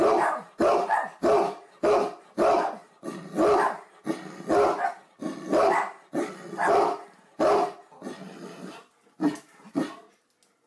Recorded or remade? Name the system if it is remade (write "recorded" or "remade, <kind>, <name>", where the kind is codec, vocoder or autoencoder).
recorded